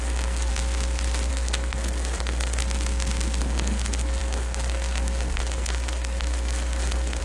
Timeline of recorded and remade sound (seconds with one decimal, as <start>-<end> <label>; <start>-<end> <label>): 0.0-0.5 remade; 0.5-1.3 recorded; 1.3-2.6 remade; 2.6-3.4 recorded; 3.4-7.2 remade